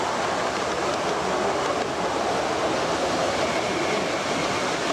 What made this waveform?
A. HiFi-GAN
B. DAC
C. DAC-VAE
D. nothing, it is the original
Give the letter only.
D